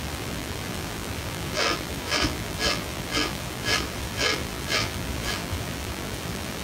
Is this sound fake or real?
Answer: fake